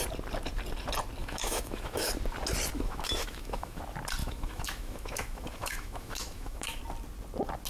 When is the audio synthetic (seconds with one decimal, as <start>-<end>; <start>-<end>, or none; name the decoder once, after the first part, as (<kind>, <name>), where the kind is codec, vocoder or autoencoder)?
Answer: 1.2-2.1 (autoencoder, DAC-VAE); 2.7-3.8; 4.2-6.8